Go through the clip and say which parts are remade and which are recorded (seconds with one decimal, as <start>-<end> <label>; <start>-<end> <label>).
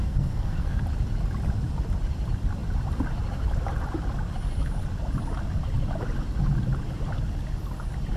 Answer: 0.0-0.8 remade; 0.8-8.2 recorded